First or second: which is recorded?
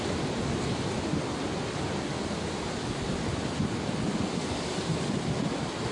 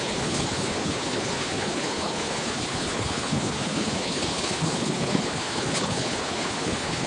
first